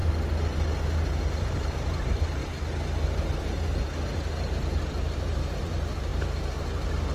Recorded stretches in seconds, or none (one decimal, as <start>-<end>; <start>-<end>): 0.0-1.3; 2.4-4.7